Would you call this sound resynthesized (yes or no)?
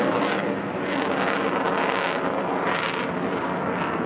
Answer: no